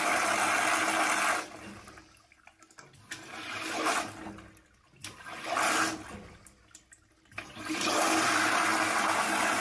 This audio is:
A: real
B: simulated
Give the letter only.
A